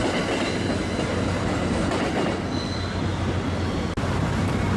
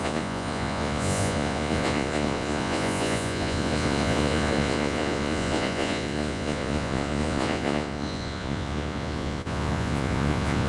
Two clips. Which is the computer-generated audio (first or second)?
second